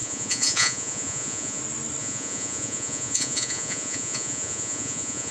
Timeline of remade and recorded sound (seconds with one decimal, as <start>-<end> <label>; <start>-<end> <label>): 0.0-1.6 remade; 1.6-2.0 recorded; 2.0-5.3 remade